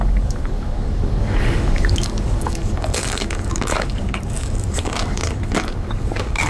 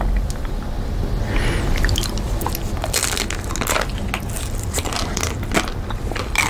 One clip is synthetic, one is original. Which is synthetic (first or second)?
first